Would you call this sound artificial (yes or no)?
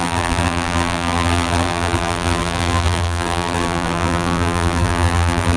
yes